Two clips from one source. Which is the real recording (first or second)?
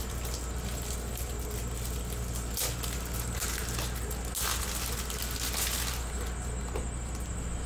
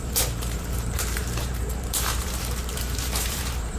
first